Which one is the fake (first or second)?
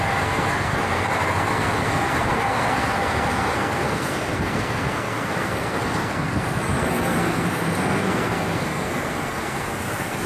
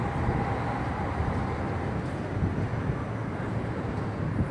first